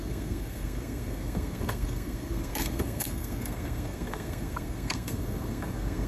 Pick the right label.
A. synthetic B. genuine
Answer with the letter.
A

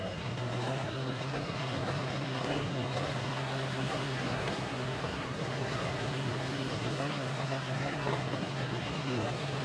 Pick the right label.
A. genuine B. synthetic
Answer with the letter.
B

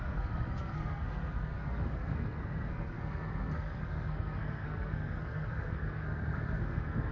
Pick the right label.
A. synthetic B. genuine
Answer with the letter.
A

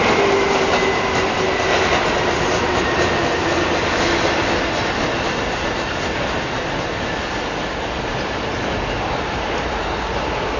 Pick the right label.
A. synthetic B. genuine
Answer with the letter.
B